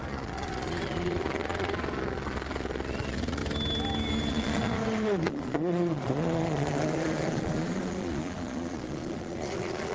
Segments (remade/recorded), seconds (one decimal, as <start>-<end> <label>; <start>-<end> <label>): 0.0-3.4 remade; 3.4-4.3 recorded; 4.3-9.9 remade